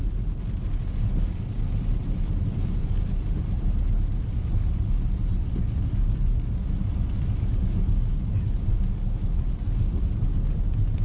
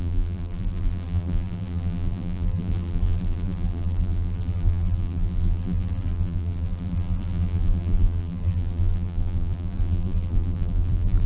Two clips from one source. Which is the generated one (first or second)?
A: second